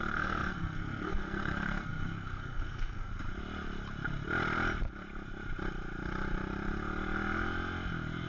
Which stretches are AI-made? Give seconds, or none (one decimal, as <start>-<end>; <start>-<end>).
0.0-3.1